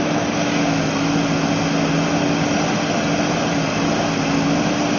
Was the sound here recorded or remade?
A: recorded